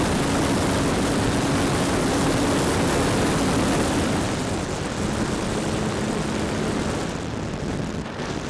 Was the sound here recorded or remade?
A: recorded